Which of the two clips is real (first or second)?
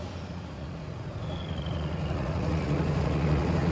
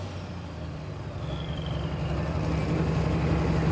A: second